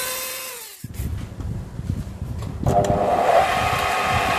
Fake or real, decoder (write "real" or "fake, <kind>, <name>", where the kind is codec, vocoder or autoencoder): real